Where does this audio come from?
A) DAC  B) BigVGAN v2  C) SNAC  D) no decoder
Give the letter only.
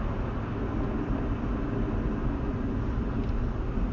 D